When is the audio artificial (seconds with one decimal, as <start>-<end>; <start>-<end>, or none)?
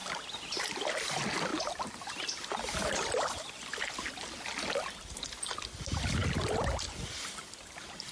none